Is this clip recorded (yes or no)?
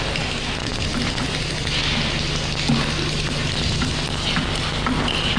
yes